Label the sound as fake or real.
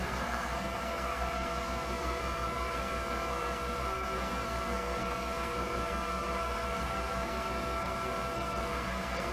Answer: fake